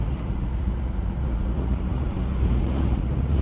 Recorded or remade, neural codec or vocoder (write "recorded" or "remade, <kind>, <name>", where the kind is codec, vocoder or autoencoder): remade, vocoder, Vocos